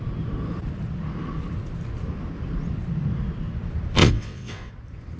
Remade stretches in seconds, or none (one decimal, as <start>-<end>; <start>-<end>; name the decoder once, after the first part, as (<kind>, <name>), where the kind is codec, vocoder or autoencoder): 4.0-4.7 (vocoder, WaveNeXt)